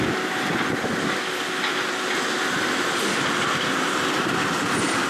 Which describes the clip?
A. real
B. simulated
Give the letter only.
A